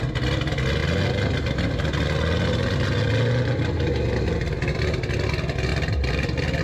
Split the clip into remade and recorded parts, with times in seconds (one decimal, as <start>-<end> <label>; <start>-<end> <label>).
0.0-5.7 recorded; 5.7-6.6 remade